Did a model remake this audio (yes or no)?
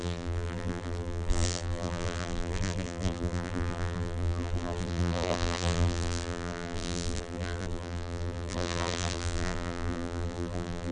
yes